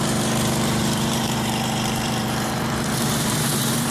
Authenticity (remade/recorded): remade